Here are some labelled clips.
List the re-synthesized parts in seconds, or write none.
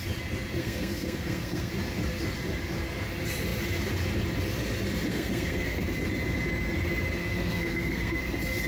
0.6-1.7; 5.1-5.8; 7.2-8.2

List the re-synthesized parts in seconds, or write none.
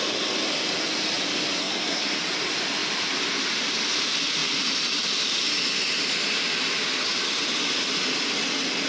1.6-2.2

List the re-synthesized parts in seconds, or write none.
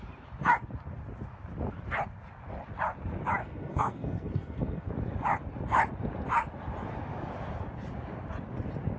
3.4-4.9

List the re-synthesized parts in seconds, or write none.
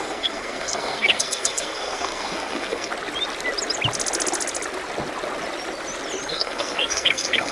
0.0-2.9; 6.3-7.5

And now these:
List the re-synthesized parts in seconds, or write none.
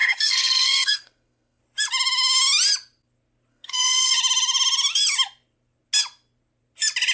0.0-1.6; 3.5-4.1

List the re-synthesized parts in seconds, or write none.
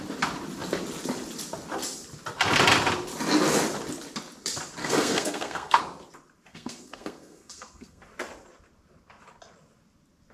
4.8-5.8; 6.5-8.0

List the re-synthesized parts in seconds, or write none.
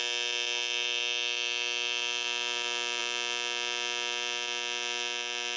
none